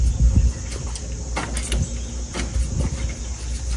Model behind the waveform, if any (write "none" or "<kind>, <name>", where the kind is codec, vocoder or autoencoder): none